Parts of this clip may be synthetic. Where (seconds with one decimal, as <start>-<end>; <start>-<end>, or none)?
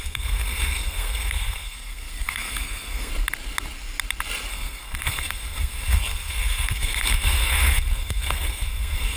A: 0.0-3.1; 4.5-9.2